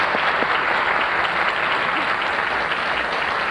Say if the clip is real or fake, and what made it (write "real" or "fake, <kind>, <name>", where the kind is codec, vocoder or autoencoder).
real